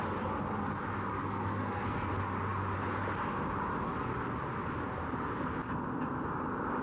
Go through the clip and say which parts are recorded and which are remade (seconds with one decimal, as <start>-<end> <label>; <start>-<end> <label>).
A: 0.0-1.1 recorded; 1.1-2.1 remade; 2.1-6.8 recorded